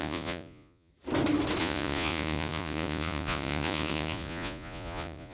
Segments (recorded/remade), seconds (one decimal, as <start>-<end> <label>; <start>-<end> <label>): 0.0-0.9 remade; 0.9-1.6 recorded; 1.6-5.3 remade